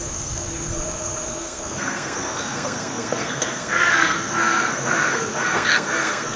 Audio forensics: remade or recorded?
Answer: remade